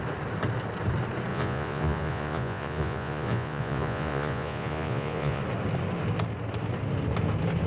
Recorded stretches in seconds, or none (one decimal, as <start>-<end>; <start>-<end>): 0.0-1.3; 5.4-7.7